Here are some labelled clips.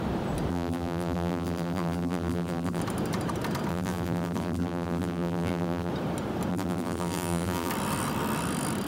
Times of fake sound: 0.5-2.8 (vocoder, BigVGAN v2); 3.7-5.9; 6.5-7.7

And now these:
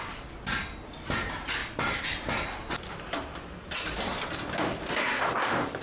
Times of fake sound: 1.6-5.1 (vocoder, BigVGAN v2)

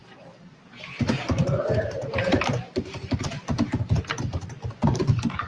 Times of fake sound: 0.0-3.3 (vocoder, BigVGAN v2); 4.3-5.0

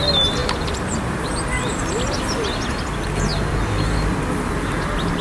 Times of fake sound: 0.4-2.2 (vocoder, BigVGAN v2)

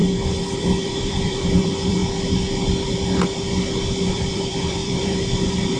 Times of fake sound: 0.6-2.0 (vocoder, BigVGAN v2); 4.1-5.8